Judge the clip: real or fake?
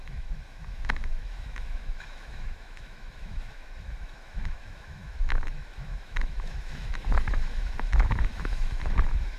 fake